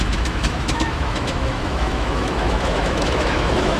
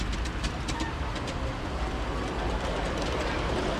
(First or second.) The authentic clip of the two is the second